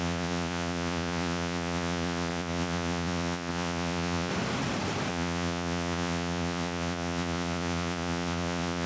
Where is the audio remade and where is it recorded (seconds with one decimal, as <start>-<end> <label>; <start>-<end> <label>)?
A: 0.0-4.3 remade; 4.3-5.1 recorded; 5.1-8.9 remade